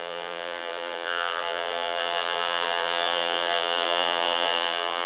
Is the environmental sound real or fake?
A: fake